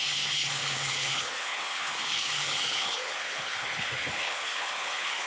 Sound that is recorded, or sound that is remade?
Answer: remade